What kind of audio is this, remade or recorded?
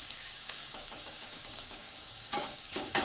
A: remade